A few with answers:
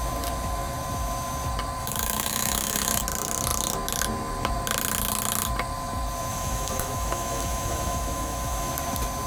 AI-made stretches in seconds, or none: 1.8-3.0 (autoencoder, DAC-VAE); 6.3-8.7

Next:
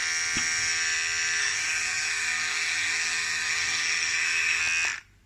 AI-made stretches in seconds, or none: 1.4-4.6 (codec, SNAC)